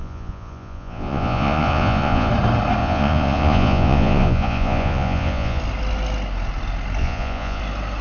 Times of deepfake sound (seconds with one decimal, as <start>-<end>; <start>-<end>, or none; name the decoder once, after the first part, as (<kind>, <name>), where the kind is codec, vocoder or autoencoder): 0.0-2.3 (vocoder, Vocos); 2.8-5.6; 7.0-7.6